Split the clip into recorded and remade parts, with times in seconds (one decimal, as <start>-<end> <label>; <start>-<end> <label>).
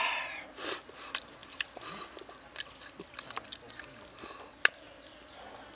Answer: 0.0-5.8 recorded